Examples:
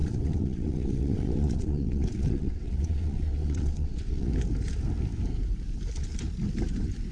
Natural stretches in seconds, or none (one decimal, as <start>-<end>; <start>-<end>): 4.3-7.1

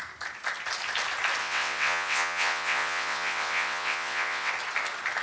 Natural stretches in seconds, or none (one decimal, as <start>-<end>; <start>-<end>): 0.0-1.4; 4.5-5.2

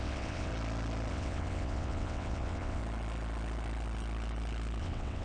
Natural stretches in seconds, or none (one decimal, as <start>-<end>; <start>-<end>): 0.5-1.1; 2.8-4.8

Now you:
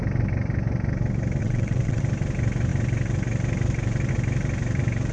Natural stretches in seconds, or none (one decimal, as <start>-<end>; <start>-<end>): 0.0-1.4; 2.0-5.1